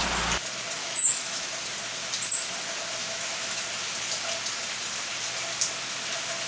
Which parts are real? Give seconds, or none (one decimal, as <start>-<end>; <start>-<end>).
0.0-0.8; 1.5-3.0; 3.6-6.5